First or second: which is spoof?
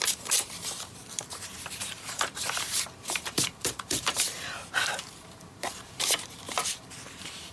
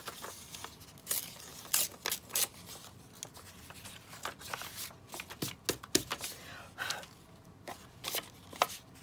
first